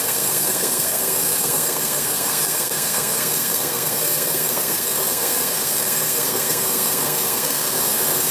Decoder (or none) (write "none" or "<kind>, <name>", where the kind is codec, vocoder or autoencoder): codec, SNAC